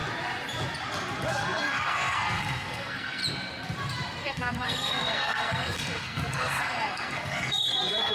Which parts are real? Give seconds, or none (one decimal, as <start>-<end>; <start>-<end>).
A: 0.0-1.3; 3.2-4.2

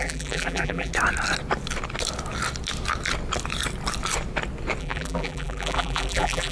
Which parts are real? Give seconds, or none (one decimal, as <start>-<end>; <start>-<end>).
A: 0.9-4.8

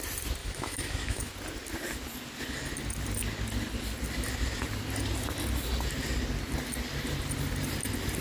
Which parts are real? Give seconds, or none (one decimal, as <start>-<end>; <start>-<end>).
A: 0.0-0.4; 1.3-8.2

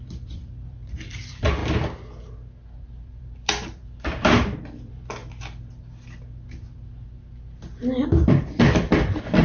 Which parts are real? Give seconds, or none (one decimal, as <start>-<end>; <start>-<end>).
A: 1.6-2.9; 5.2-8.0

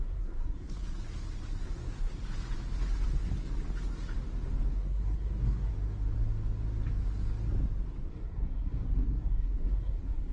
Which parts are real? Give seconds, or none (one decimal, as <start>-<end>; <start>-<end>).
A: 0.8-1.6; 2.2-4.7; 5.7-8.1

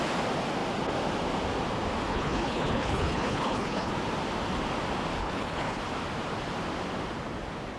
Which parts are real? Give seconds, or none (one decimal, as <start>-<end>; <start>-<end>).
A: 0.0-2.1; 3.9-5.2; 5.8-7.8